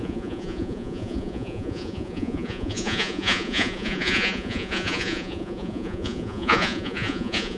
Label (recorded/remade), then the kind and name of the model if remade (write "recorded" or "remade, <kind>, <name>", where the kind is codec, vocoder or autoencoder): remade, vocoder, Vocos